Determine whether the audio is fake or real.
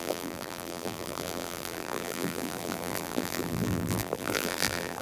fake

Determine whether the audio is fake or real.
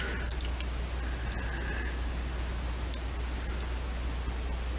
real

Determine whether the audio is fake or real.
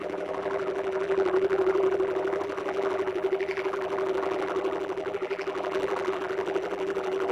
fake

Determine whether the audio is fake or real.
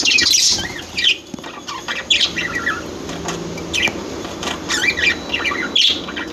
real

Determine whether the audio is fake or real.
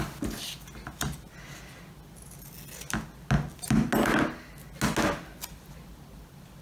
real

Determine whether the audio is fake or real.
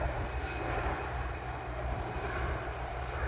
fake